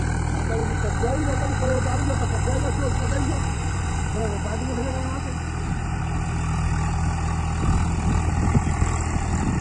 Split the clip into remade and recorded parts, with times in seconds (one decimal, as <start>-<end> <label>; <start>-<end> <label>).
0.0-0.6 recorded; 0.6-4.2 remade; 4.2-9.6 recorded